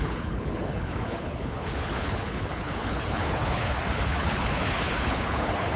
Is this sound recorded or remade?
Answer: remade